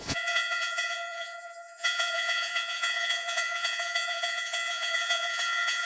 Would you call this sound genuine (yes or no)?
no